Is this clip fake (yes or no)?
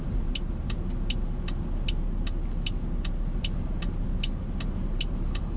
no